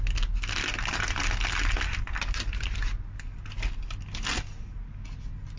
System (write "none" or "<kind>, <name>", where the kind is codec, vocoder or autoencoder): none